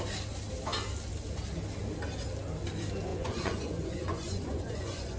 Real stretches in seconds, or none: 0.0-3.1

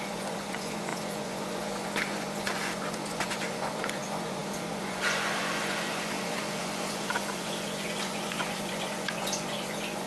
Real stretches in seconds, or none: none

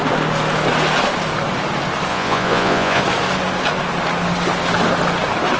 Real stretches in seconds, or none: 0.0-2.1; 3.0-5.6